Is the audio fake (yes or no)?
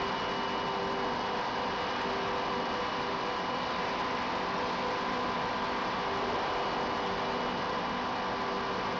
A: no